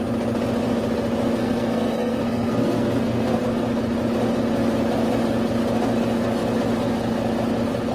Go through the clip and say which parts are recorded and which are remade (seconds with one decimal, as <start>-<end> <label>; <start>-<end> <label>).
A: 0.0-1.4 recorded; 1.4-3.4 remade; 3.4-7.9 recorded